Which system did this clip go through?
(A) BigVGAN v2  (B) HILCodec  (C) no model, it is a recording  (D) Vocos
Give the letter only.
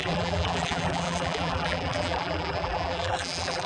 A